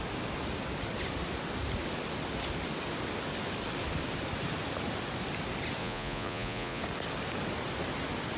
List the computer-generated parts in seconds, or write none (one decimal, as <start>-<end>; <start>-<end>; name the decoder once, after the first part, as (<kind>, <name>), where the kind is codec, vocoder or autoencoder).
5.8-6.8 (vocoder, Vocos)